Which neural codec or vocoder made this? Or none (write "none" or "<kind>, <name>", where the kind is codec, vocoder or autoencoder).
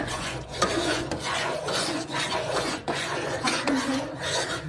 vocoder, Vocos